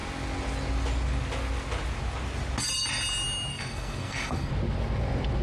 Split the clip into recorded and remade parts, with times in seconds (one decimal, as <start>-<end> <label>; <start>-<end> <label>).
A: 0.0-3.5 recorded; 3.5-4.5 remade; 4.5-5.4 recorded